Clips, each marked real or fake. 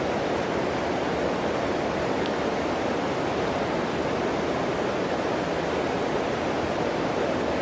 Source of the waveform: real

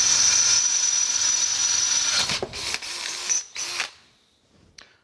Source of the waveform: real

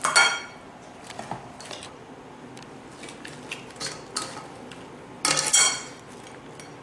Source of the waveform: real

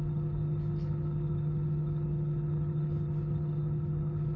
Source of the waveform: fake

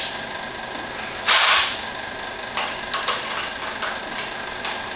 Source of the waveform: real